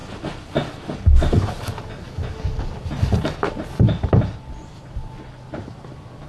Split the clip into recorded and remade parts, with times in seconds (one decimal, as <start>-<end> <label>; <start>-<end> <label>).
0.0-6.3 recorded